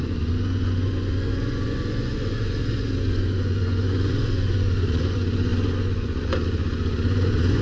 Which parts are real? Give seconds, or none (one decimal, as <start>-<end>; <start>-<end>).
none